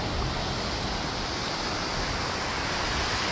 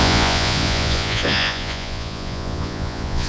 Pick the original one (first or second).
first